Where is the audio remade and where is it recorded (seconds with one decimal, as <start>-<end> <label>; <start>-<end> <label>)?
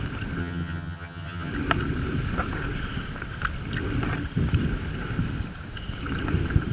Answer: 0.0-0.4 recorded; 0.4-1.5 remade; 1.5-6.7 recorded